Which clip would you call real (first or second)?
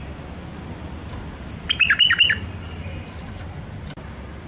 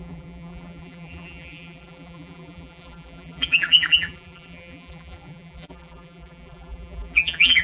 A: first